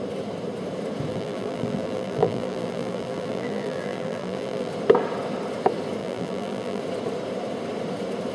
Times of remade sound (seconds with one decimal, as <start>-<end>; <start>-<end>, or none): 1.1-4.7; 6.0-6.8